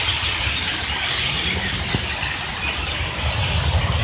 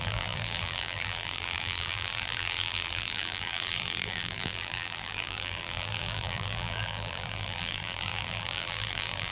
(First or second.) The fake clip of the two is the second